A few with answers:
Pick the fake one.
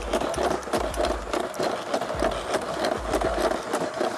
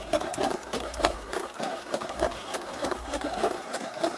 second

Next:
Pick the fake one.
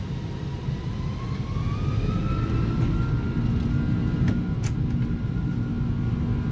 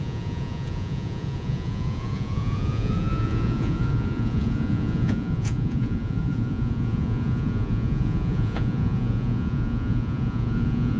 second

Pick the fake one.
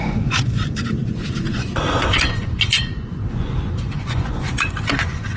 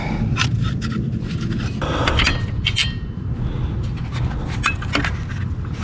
first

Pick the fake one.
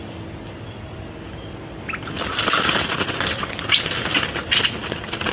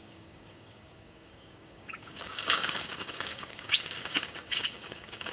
second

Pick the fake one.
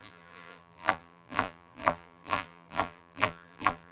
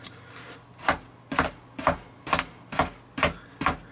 first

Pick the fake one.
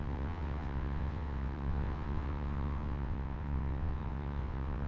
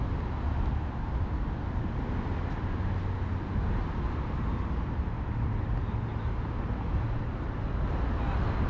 first